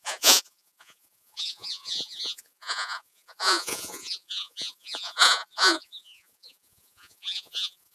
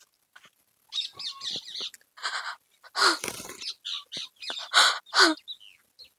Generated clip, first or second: first